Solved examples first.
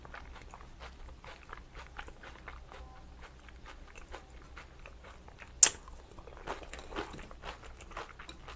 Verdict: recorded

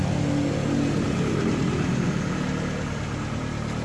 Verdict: recorded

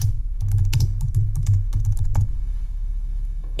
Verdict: remade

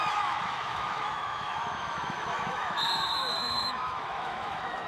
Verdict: remade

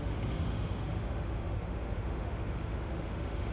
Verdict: remade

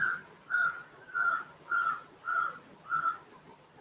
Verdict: recorded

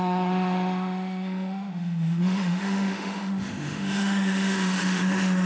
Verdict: remade